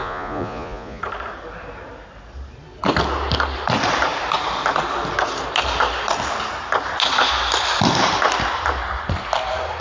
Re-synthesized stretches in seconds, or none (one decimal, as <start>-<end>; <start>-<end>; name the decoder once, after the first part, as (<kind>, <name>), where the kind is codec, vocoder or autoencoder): 0.0-1.0 (vocoder, Vocos)